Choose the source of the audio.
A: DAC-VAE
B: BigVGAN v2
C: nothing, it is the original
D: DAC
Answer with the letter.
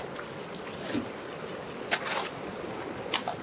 C